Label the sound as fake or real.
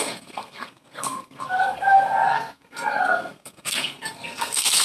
fake